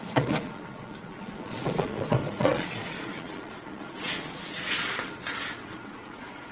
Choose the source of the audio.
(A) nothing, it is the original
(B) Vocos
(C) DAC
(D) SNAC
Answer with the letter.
B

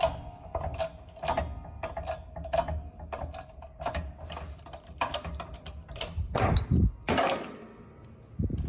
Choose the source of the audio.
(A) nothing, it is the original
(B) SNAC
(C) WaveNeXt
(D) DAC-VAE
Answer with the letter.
A